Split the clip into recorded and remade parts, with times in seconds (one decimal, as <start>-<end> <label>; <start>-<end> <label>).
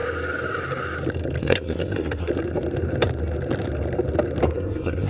0.0-1.4 recorded; 1.4-2.3 remade; 2.3-4.4 recorded; 4.4-5.1 remade